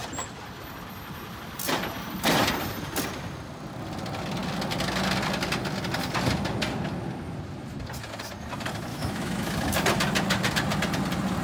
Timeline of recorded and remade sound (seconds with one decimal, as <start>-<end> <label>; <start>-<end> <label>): 0.0-8.9 recorded; 8.9-9.5 remade; 9.5-11.4 recorded